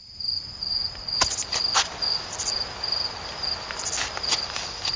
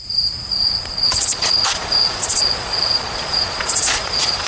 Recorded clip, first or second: first